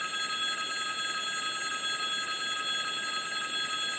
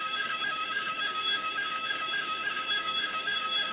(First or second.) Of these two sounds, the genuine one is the first